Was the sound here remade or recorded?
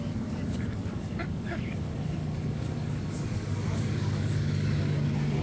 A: remade